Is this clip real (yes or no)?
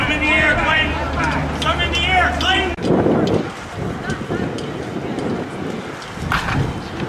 yes